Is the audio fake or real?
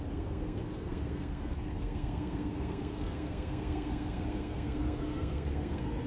fake